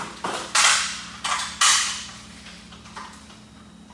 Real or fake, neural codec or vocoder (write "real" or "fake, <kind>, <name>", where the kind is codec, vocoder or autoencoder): real